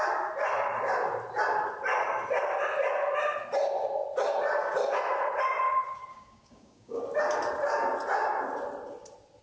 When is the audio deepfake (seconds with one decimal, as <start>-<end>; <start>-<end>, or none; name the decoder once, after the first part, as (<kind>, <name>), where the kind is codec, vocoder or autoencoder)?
6.1-7.0 (codec, DAC)